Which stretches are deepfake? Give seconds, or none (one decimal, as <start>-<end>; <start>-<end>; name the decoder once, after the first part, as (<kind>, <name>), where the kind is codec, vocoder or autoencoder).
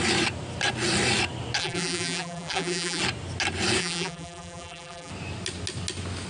1.6-3.0 (vocoder, BigVGAN v2); 3.8-5.1